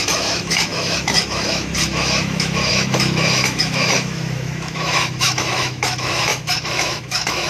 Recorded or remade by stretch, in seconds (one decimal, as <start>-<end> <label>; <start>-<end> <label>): 0.0-7.5 remade